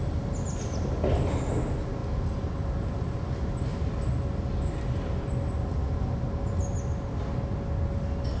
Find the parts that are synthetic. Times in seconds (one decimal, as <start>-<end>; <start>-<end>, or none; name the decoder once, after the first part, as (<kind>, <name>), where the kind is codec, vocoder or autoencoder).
none